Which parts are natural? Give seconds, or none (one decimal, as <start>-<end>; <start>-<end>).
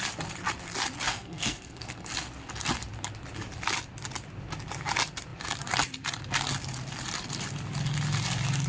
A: 0.0-1.1; 2.1-8.7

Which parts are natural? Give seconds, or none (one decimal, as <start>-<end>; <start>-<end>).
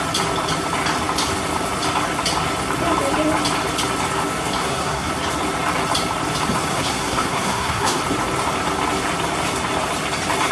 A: 0.0-4.6; 5.1-6.7; 8.0-10.5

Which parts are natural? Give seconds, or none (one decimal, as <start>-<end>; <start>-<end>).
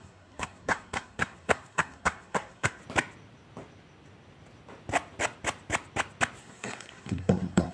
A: 2.8-6.4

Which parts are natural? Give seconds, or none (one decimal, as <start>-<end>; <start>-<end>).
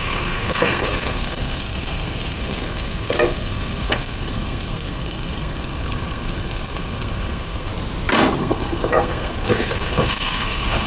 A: 7.7-8.4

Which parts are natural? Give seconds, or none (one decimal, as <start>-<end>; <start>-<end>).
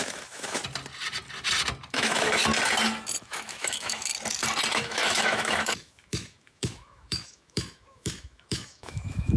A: 0.6-1.9; 2.4-3.2; 4.1-4.7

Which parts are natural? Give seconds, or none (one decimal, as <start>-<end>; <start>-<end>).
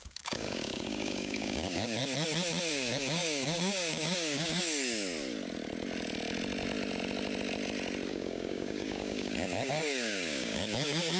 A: 2.0-2.7; 4.6-8.1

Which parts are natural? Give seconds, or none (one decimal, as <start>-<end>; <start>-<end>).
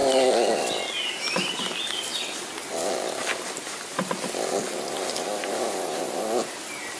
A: 0.0-7.0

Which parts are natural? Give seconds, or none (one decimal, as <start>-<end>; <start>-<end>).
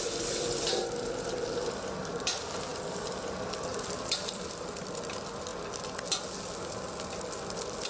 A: 0.0-2.7; 3.2-3.7; 5.0-7.9